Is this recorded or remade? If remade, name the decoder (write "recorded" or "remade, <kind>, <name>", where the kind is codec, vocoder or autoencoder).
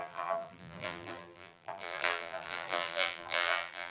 remade, vocoder, BigVGAN v2